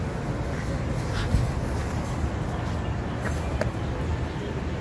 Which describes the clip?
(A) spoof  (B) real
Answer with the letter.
B